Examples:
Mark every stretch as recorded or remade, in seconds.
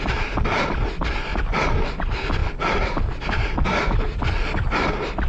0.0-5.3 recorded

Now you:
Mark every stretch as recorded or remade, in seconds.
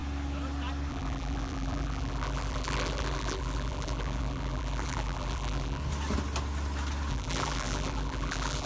0.0-0.9 recorded; 0.9-5.8 remade; 5.8-7.1 recorded; 7.1-8.7 remade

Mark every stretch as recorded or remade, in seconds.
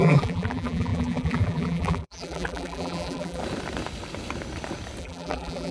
0.0-3.4 remade; 3.4-5.0 recorded; 5.0-5.7 remade